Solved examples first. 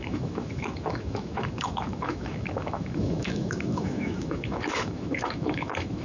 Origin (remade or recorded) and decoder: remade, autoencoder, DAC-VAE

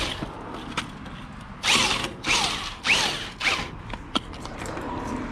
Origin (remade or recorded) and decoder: recorded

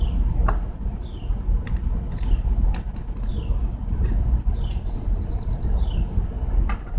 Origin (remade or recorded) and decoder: recorded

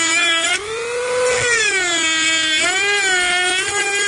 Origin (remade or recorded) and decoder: recorded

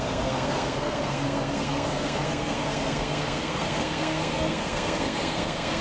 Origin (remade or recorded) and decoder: remade, codec, SNAC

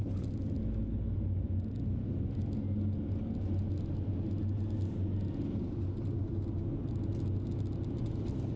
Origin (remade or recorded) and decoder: recorded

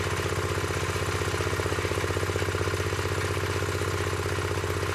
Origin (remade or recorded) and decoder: recorded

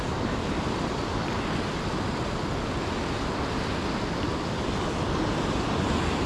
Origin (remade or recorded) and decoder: recorded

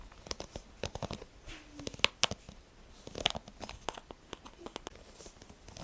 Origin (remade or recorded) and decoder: recorded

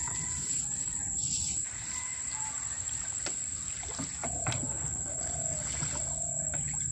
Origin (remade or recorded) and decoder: remade, vocoder, BigVGAN v2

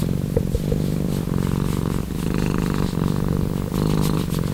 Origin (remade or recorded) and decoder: recorded